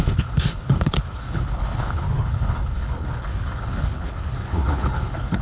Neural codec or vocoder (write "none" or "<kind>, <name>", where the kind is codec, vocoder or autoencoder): codec, HILCodec